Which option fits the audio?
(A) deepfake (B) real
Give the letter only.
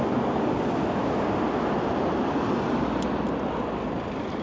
B